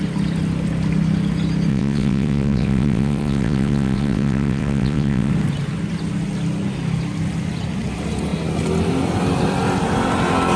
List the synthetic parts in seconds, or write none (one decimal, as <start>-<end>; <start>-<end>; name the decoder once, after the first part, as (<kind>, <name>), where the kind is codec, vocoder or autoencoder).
1.7-5.3 (vocoder, WaveNeXt)